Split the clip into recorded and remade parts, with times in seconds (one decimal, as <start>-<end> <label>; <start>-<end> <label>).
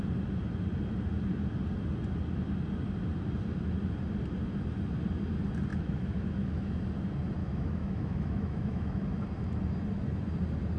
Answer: 0.0-5.7 recorded; 5.7-6.8 remade; 6.8-7.4 recorded; 7.4-9.0 remade; 9.0-10.8 recorded